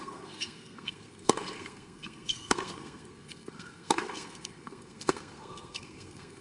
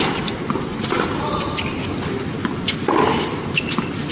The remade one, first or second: first